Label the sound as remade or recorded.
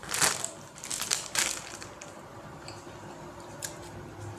remade